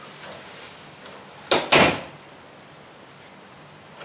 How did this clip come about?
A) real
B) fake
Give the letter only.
A